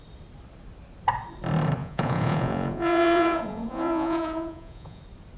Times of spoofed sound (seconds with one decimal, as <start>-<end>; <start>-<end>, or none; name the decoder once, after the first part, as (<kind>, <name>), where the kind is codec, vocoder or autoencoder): 1.8-5.0 (vocoder, Vocos)